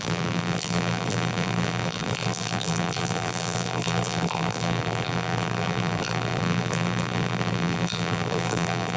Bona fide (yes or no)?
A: no